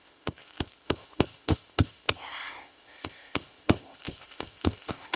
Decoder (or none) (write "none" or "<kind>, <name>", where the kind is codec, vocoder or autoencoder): codec, ZipCodec